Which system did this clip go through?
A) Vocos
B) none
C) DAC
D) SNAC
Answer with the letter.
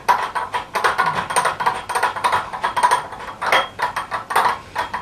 B